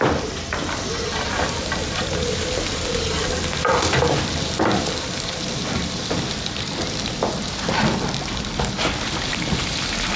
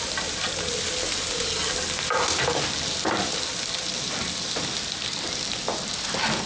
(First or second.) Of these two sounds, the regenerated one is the first